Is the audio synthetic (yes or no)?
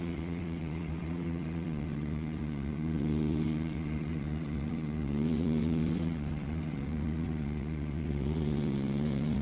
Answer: yes